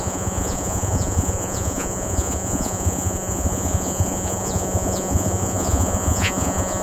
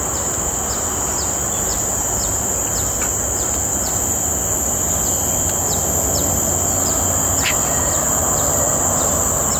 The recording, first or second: second